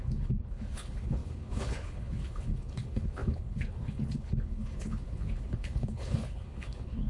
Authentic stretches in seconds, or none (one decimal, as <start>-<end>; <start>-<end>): none